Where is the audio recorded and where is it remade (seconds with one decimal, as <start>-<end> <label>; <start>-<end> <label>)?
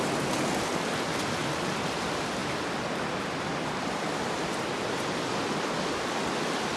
0.0-6.8 recorded